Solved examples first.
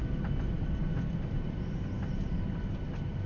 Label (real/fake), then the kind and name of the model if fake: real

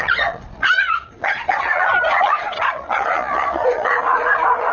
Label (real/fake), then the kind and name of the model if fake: fake, vocoder, Vocos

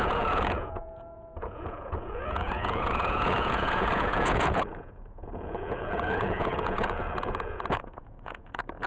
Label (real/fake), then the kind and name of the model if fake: fake, vocoder, Vocos